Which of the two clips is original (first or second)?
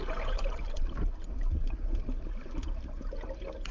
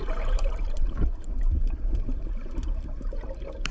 first